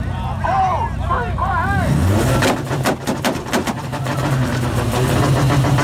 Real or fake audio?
real